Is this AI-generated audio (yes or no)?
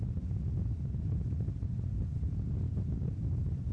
no